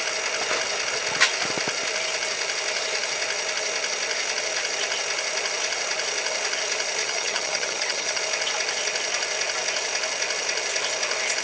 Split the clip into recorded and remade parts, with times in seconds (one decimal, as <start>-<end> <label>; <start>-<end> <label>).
0.0-7.0 recorded; 7.0-8.2 remade; 8.2-11.4 recorded